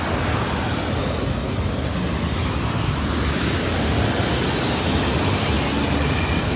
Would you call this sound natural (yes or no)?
yes